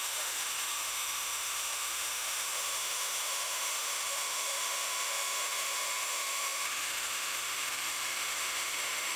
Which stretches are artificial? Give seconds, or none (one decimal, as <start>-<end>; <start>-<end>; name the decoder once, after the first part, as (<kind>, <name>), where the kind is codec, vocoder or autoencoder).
0.0-9.2 (autoencoder, DAC-VAE)